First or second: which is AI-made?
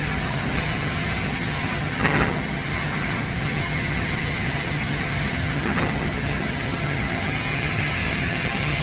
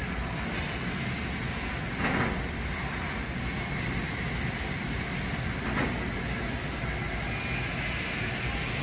first